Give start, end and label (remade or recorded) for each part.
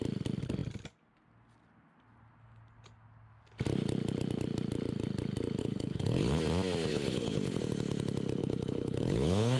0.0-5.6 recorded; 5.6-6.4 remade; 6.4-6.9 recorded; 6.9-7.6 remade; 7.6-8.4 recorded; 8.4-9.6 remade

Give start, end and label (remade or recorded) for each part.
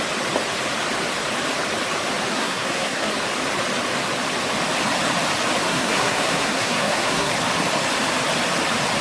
0.0-2.3 recorded; 2.3-3.1 remade; 3.1-5.7 recorded; 5.7-7.3 remade; 7.3-9.0 recorded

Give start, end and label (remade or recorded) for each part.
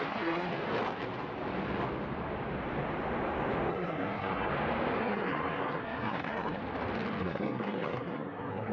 0.0-0.5 remade; 0.5-3.7 recorded; 3.7-4.5 remade; 4.5-5.0 recorded; 5.0-6.6 remade; 6.6-7.2 recorded; 7.2-8.7 remade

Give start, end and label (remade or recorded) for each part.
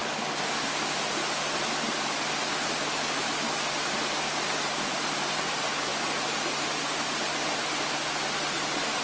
0.0-9.0 recorded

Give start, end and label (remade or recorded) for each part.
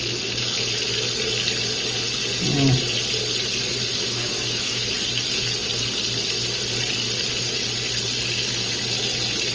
0.0-3.9 recorded; 3.9-4.9 remade; 4.9-9.5 recorded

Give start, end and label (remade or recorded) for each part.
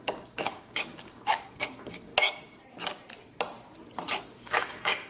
0.0-2.1 remade; 2.1-4.2 recorded; 4.2-5.1 remade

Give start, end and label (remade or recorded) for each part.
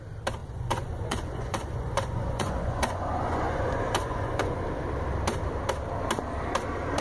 0.0-0.4 recorded; 0.4-4.6 remade; 4.6-7.0 recorded